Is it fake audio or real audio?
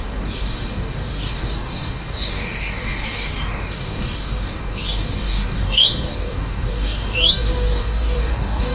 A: fake